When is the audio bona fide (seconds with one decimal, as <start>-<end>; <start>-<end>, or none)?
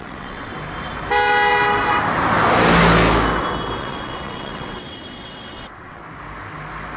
0.5-3.8; 6.0-7.0